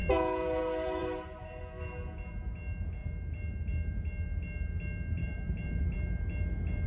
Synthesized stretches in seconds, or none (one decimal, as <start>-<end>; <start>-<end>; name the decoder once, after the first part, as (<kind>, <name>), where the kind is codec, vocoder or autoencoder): 1.0-1.6 (vocoder, BigVGAN v2); 5.2-5.8